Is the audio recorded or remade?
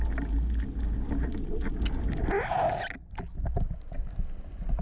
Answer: recorded